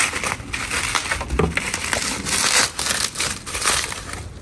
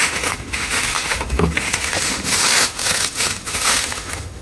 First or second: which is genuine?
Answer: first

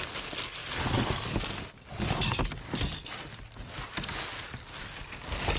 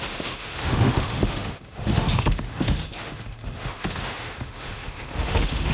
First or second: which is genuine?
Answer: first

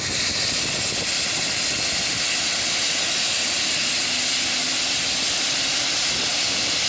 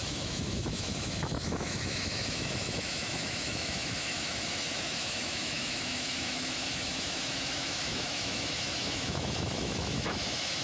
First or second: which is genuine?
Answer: first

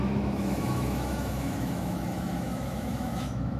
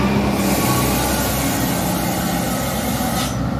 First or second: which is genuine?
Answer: second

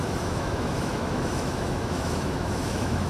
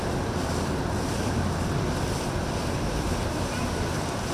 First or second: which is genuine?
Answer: second